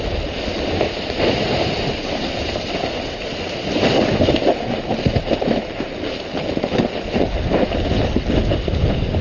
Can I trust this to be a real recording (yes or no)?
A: yes